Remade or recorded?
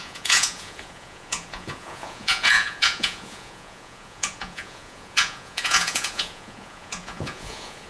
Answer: remade